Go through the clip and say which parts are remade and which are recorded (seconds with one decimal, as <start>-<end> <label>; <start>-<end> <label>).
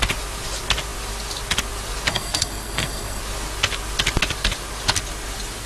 0.0-2.1 recorded; 2.1-3.2 remade; 3.2-5.7 recorded